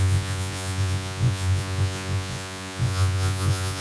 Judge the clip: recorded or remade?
remade